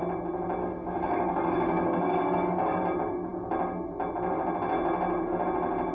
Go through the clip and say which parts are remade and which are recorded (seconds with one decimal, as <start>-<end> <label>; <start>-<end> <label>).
0.0-0.6 recorded; 0.6-2.8 remade; 2.8-5.9 recorded

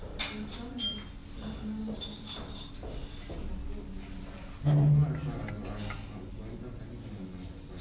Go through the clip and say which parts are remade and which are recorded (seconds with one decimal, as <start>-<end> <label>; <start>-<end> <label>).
0.0-7.8 recorded

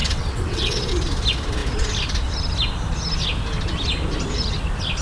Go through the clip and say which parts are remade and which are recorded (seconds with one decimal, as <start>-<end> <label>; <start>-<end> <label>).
0.0-0.9 remade; 0.9-5.0 recorded